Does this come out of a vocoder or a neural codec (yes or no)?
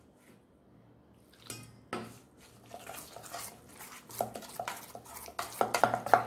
no